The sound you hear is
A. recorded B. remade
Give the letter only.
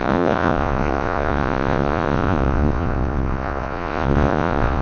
B